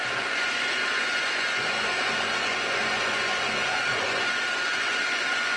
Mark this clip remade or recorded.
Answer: remade